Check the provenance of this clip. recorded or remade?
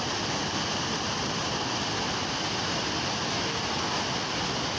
recorded